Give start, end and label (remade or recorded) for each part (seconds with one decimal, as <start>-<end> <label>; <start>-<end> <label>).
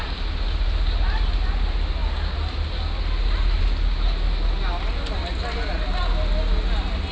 0.0-7.1 recorded